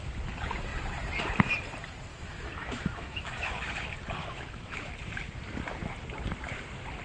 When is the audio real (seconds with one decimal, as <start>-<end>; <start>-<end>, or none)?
0.0-2.1; 3.6-4.2; 4.9-7.0